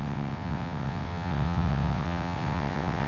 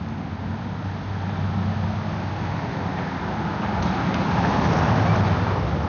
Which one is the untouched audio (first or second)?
second